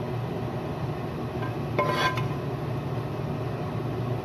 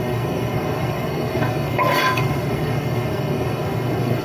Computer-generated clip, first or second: second